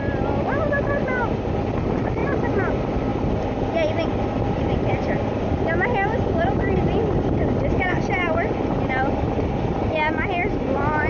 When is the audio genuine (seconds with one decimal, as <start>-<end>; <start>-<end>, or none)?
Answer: 0.0-11.1